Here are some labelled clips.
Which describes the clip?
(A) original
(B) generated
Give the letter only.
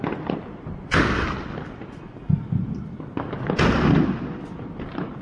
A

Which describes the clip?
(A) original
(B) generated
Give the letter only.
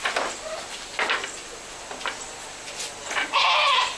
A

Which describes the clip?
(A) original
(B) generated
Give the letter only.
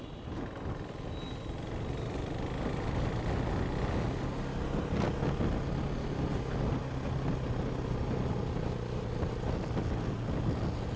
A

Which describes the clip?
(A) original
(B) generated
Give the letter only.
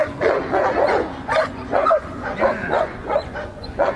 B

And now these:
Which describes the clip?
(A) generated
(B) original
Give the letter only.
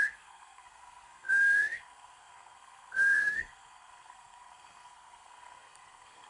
A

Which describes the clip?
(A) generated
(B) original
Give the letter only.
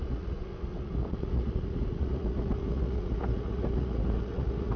A